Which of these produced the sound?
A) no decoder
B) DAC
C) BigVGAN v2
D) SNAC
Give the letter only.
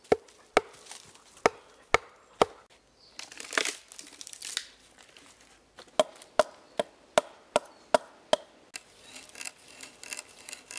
A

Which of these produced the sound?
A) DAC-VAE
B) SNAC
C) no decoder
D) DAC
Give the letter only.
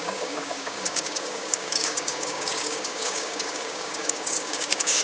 D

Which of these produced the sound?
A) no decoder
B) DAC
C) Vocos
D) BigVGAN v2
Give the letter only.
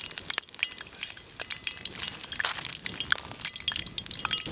A